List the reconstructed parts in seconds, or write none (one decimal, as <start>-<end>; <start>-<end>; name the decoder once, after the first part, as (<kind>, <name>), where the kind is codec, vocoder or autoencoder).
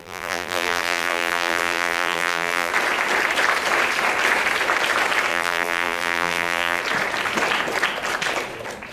0.0-2.7 (vocoder, BigVGAN v2); 5.3-6.8